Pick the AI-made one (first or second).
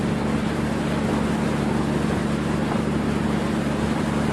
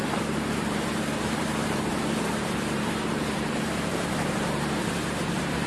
second